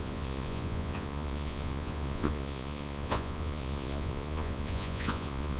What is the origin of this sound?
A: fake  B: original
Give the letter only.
A